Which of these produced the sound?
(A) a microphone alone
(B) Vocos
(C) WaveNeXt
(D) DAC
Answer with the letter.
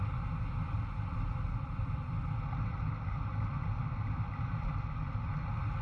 A